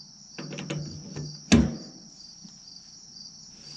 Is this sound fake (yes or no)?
no